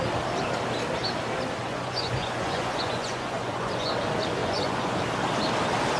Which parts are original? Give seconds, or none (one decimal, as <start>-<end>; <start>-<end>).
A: 0.0-1.6; 3.9-4.4; 5.0-6.0